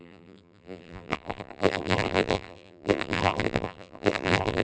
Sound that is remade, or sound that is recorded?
remade